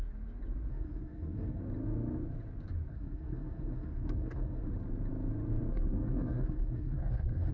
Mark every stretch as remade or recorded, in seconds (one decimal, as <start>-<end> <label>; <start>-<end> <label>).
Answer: 0.0-0.7 recorded; 0.7-1.6 remade; 1.6-2.9 recorded; 2.9-4.7 remade; 4.7-5.7 recorded; 5.7-7.5 remade